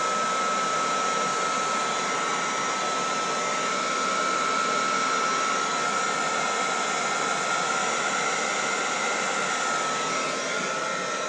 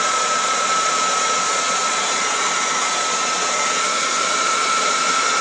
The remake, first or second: second